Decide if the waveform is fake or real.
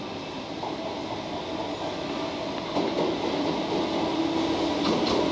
real